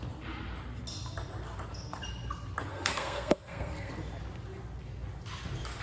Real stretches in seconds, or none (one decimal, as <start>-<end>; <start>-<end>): 0.0-2.7; 3.9-5.8